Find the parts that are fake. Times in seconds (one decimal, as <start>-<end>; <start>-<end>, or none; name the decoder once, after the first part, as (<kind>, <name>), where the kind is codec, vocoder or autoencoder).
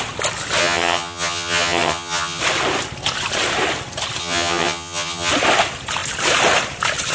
0.6-2.4 (vocoder, HiFi-GAN); 4.2-5.3